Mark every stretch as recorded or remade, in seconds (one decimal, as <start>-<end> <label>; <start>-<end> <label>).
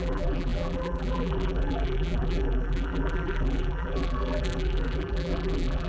0.0-5.9 remade